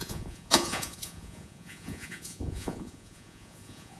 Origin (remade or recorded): remade